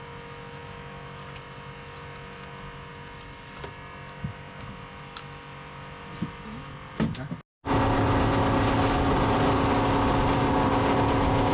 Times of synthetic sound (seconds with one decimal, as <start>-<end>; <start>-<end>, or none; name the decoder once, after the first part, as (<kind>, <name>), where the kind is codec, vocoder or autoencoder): none